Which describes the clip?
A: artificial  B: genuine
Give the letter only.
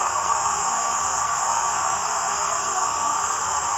A